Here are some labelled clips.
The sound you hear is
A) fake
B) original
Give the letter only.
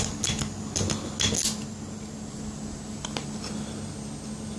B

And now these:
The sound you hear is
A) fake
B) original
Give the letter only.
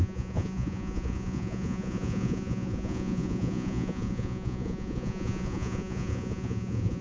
A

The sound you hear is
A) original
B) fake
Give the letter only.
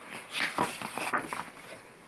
A